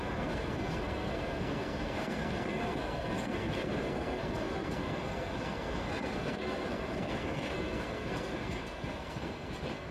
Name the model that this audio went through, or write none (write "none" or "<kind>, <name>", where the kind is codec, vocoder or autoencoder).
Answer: codec, SNAC